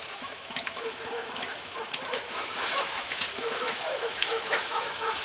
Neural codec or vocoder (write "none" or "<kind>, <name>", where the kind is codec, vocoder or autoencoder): autoencoder, DAC-VAE